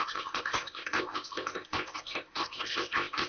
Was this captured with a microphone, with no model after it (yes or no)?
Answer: no